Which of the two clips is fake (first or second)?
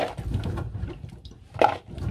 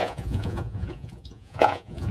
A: second